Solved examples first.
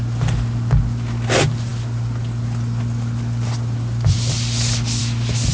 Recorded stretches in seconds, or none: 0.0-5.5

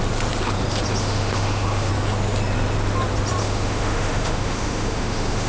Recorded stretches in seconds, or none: 0.0-1.0; 1.9-3.4

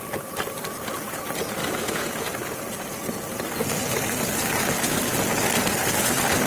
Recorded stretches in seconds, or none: 0.0-1.6; 2.3-6.5

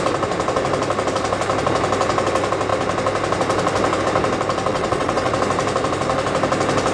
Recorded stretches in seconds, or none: 0.0-4.7; 5.3-6.9